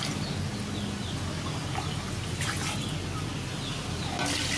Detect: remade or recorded recorded